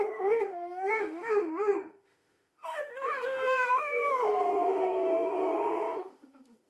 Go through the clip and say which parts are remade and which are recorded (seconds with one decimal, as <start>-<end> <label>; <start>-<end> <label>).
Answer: 0.0-6.7 remade